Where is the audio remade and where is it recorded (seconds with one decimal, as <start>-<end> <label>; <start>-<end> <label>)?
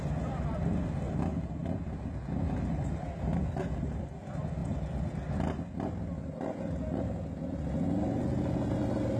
0.0-9.2 recorded